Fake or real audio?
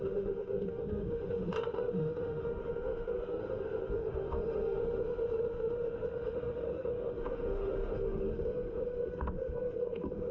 fake